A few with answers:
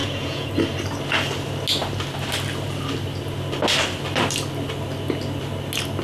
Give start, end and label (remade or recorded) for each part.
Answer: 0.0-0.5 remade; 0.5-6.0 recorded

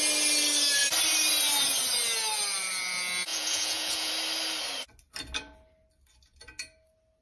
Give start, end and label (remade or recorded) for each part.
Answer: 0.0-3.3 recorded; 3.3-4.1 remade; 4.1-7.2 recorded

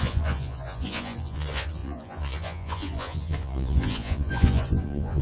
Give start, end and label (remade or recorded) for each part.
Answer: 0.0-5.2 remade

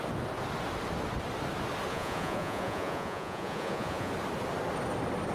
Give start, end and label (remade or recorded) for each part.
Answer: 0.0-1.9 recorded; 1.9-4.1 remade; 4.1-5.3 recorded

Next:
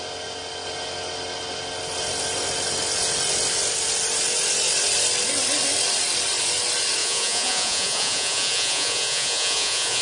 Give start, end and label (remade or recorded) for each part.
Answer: 0.0-7.0 recorded; 7.0-10.0 remade

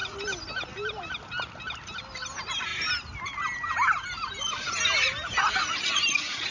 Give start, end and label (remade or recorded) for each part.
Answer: 0.0-6.5 recorded